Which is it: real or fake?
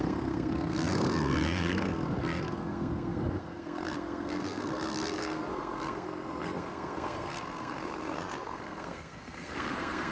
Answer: fake